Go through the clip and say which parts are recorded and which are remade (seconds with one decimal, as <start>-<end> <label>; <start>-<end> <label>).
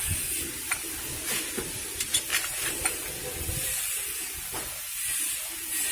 0.0-5.9 remade